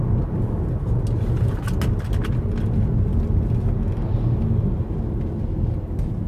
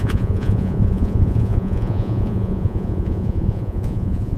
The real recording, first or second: first